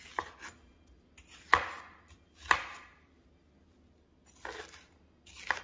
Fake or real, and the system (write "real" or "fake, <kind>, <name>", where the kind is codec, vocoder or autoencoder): real